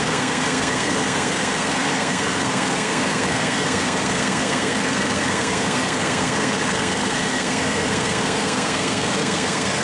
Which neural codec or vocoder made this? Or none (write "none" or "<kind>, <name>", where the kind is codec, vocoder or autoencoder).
codec, SNAC